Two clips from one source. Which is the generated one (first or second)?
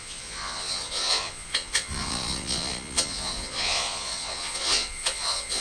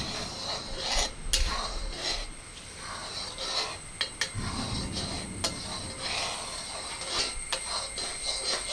first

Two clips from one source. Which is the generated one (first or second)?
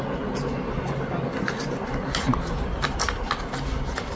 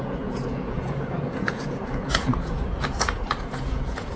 second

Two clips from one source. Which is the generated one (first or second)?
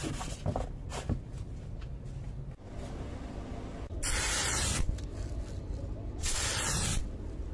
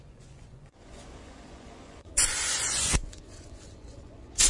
second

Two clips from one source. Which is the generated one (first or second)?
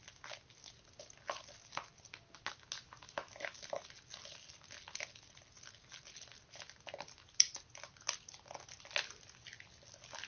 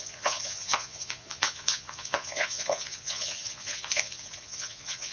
second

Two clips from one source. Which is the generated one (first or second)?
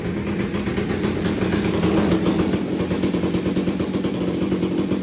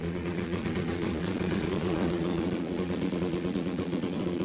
second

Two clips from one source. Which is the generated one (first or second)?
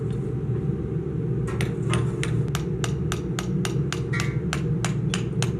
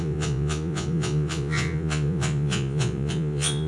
second